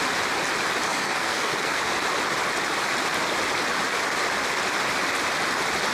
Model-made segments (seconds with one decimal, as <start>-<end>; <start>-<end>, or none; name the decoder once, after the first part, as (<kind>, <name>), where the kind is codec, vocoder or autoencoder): 0.9-1.8 (codec, SNAC)